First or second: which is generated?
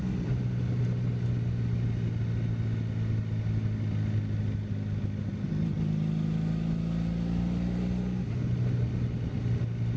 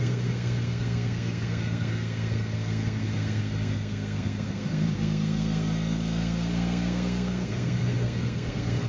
second